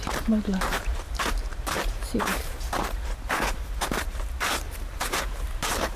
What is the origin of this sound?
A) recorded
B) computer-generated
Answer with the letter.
B